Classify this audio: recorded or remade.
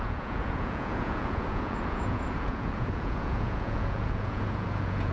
remade